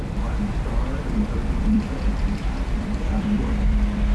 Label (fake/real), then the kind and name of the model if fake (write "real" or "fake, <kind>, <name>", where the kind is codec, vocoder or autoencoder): fake, vocoder, BigVGAN v2